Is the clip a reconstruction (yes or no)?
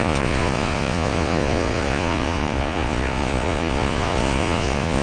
yes